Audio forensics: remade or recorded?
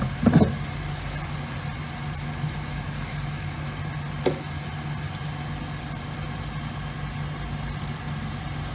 recorded